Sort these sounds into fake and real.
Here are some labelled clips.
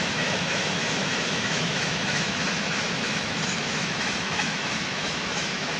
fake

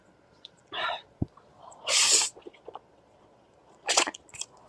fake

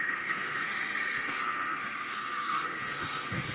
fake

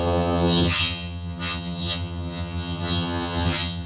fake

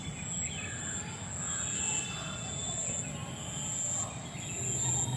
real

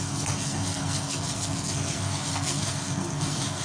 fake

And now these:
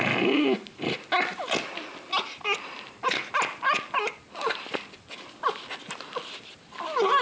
real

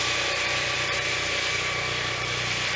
fake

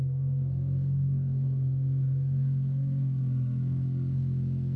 fake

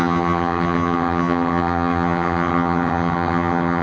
fake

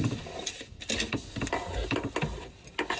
real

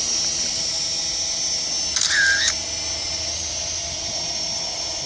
real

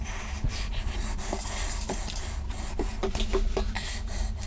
fake